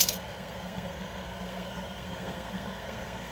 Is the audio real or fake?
fake